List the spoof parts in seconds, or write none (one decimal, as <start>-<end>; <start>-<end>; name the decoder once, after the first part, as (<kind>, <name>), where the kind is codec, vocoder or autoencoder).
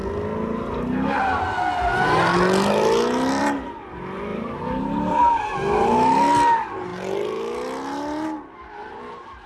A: 4.3-5.3 (vocoder, BigVGAN v2)